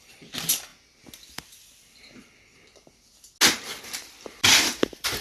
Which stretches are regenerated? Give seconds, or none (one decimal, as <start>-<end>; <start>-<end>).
0.0-0.7; 3.8-5.2